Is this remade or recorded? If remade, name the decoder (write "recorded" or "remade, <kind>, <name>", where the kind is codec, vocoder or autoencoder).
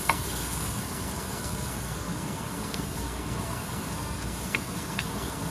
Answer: remade, codec, SNAC